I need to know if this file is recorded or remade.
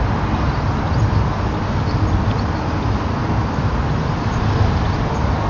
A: recorded